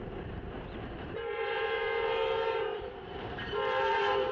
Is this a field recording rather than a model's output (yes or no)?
no